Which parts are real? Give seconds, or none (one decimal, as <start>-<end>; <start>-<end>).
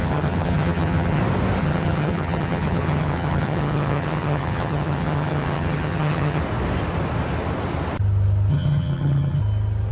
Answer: 1.2-1.6; 6.4-8.5; 9.4-9.9